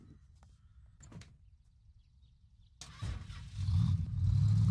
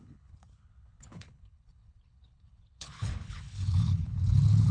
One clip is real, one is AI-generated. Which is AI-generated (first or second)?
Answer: second